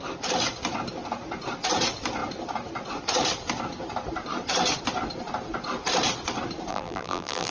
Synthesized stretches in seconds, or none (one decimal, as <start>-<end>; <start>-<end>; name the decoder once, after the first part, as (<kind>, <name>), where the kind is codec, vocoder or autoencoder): 6.7-7.5 (vocoder, BigVGAN v2)